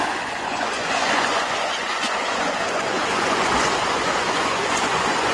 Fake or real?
fake